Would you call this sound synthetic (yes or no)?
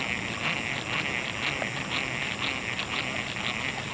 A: no